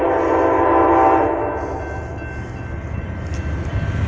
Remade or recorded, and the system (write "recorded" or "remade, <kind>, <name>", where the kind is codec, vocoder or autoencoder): recorded